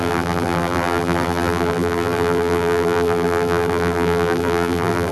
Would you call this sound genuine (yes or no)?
no